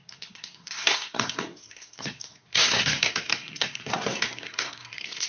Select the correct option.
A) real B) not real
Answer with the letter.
B